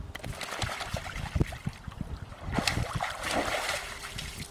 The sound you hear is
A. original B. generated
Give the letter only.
A